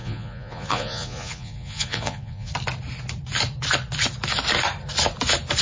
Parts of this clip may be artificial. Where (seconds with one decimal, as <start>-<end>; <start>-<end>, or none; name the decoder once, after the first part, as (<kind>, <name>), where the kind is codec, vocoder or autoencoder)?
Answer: 0.0-2.5 (vocoder, Vocos)